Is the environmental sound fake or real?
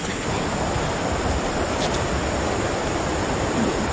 real